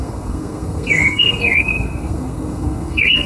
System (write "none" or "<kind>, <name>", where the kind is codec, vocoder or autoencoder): codec, SNAC